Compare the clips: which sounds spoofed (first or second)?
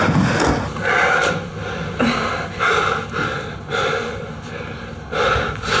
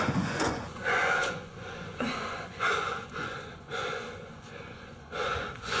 second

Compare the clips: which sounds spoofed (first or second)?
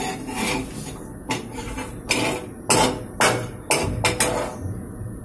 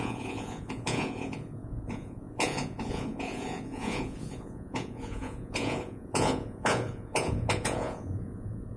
second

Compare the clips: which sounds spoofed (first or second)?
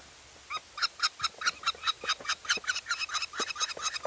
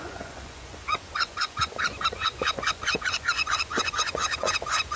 second